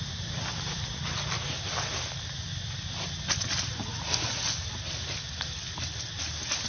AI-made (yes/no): no